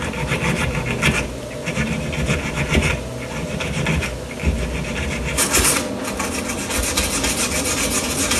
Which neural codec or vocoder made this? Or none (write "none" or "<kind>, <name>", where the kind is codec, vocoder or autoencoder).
none